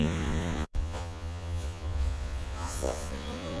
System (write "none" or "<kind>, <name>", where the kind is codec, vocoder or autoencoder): vocoder, Vocos